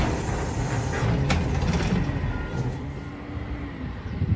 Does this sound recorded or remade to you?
recorded